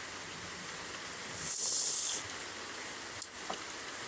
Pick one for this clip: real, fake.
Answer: real